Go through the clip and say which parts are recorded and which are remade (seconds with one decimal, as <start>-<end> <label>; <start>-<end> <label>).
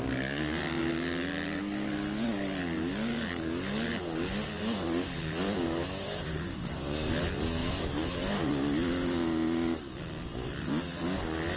0.0-6.0 recorded; 6.0-7.1 remade; 7.1-7.6 recorded; 7.6-8.5 remade; 8.5-11.6 recorded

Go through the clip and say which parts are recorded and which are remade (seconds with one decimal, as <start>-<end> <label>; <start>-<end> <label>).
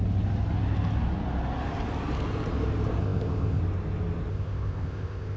0.0-3.0 recorded; 3.0-3.6 remade; 3.6-4.3 recorded; 4.3-5.4 remade